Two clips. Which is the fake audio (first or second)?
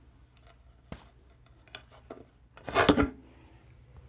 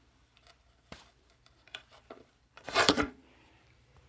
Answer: second